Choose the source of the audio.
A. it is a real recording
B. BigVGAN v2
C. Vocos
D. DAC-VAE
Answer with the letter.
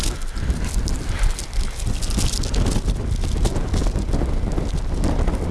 A